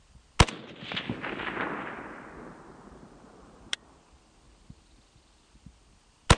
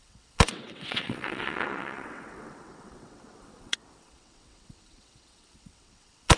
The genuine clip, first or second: first